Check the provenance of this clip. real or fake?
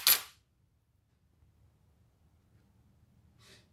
real